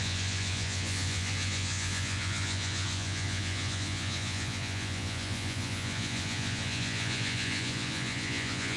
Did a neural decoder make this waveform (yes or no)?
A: yes